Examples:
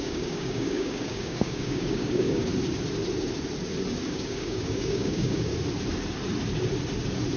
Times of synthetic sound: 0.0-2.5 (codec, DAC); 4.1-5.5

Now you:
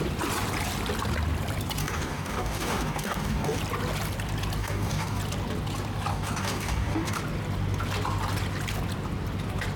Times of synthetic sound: 1.8-3.6 (codec, DAC); 4.6-5.2; 6.1-7.2

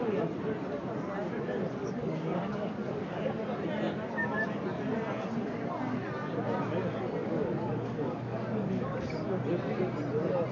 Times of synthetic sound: 1.8-3.3 (codec, DAC); 7.2-9.0

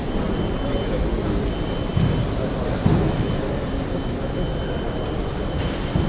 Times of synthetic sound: none

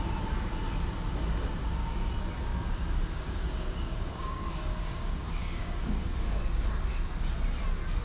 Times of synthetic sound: 1.6-2.1 (codec, DAC); 2.5-6.4

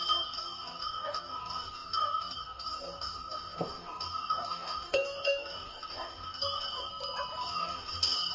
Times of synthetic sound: 0.0-6.9 (codec, DAC); 7.4-8.3